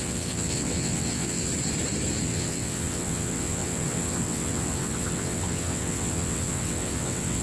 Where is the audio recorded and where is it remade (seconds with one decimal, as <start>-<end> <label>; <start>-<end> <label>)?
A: 0.0-1.5 remade; 1.5-2.2 recorded; 2.2-7.4 remade

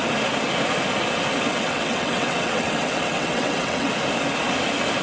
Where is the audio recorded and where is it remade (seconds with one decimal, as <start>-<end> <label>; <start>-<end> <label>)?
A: 0.0-1.5 recorded; 1.5-3.9 remade; 3.9-5.0 recorded